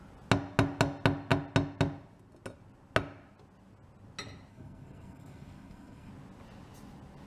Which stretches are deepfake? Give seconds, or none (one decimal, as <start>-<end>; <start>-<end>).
4.5-6.1